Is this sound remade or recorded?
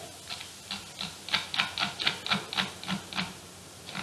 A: recorded